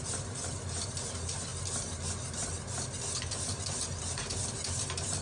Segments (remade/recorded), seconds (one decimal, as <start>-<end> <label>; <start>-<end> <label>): 0.0-5.2 recorded